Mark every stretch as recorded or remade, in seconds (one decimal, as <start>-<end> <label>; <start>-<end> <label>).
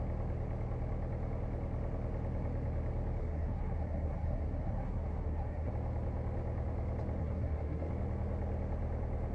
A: 0.0-3.2 recorded; 3.2-5.7 remade; 5.7-7.2 recorded; 7.2-7.9 remade; 7.9-9.3 recorded